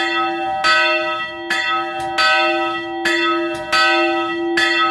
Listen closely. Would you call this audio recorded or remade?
recorded